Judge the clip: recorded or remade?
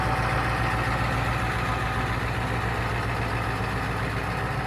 recorded